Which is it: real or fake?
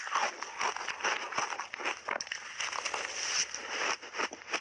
real